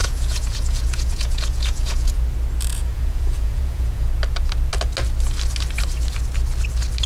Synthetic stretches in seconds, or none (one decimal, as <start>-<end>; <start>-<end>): 0.0-2.2; 2.7-4.1